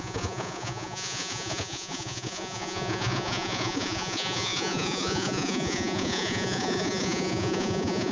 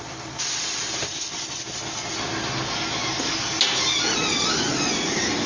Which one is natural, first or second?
second